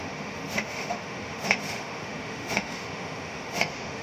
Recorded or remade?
remade